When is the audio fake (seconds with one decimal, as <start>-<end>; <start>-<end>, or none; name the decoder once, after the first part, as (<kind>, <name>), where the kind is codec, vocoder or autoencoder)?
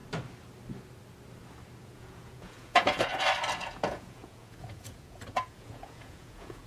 1.8-3.1 (vocoder, Vocos); 3.6-6.7